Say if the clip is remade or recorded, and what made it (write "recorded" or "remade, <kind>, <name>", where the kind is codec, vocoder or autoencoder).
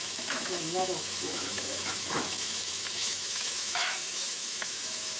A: remade, autoencoder, DAC-VAE